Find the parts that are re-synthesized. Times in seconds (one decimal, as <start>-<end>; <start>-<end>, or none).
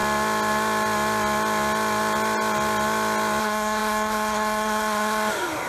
3.4-5.7